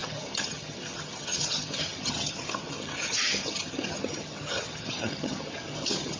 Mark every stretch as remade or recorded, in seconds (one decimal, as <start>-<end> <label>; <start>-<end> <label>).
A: 0.0-6.2 remade